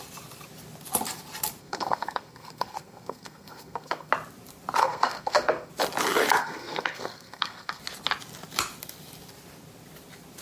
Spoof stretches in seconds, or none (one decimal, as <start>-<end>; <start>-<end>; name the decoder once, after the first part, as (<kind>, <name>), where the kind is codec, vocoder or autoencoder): 1.6-4.1 (codec, SNAC); 4.8-5.7; 6.4-7.8